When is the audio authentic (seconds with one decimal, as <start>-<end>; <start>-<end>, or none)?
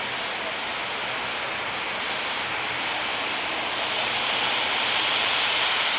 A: 0.0-6.0